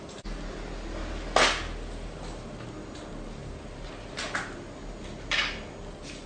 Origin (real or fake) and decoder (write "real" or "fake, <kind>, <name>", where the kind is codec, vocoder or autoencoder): real